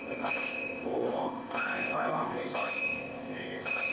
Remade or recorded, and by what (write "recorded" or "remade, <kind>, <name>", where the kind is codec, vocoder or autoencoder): remade, codec, ZipCodec